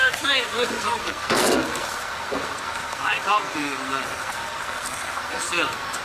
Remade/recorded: remade